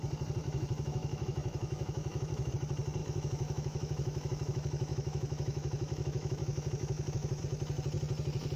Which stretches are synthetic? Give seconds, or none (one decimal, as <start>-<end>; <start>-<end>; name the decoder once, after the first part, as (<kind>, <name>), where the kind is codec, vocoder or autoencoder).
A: 0.4-2.5 (autoencoder, DAC-VAE); 3.0-7.4